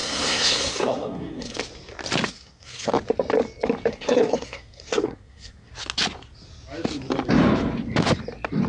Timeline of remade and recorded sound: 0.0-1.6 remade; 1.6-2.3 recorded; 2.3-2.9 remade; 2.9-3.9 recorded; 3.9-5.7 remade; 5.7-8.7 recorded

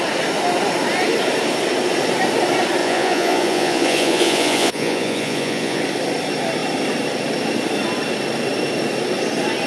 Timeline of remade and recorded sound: 0.0-2.8 recorded; 2.8-5.8 remade; 5.8-9.7 recorded

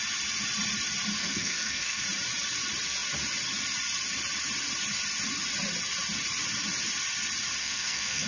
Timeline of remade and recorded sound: 0.0-1.2 recorded; 1.2-2.0 remade; 2.0-7.6 recorded; 7.6-8.3 remade

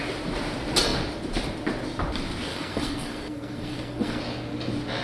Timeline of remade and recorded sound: 0.0-2.5 recorded; 2.5-4.2 remade; 4.2-5.0 recorded

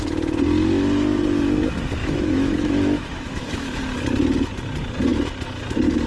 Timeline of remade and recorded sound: 0.0-2.0 recorded; 2.0-3.8 remade; 3.8-6.1 recorded

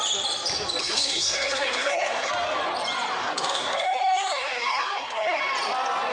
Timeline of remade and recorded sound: 0.0-0.8 recorded; 0.8-2.3 remade; 2.3-3.2 recorded; 3.2-5.4 remade; 5.4-6.1 recorded

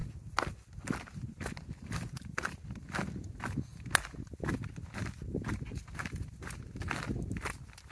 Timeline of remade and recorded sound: 0.0-7.9 recorded